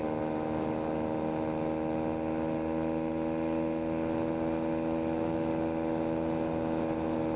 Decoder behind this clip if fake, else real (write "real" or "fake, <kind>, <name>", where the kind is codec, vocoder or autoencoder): real